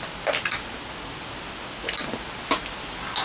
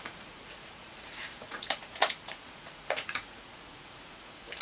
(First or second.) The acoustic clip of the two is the first